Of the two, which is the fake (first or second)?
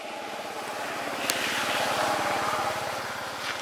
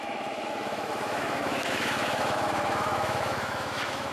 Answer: second